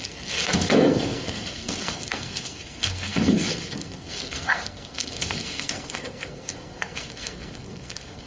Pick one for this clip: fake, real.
fake